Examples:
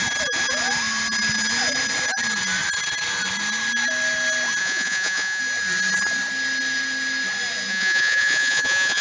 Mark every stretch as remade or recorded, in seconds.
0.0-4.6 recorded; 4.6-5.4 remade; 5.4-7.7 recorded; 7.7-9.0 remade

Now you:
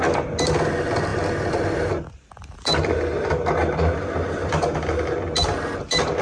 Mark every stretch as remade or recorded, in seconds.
0.0-3.6 recorded; 3.6-4.5 remade; 4.5-6.2 recorded

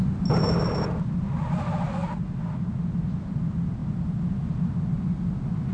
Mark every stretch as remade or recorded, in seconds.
0.0-5.7 recorded

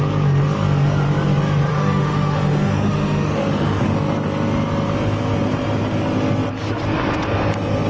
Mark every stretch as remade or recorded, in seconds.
0.0-1.7 recorded; 1.7-3.9 remade; 3.9-7.9 recorded

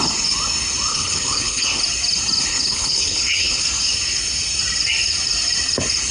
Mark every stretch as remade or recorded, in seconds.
0.0-0.9 recorded; 0.9-1.8 remade; 1.8-2.5 recorded; 2.5-3.6 remade; 3.6-6.1 recorded